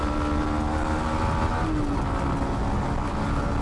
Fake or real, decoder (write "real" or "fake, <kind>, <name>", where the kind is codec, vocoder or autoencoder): real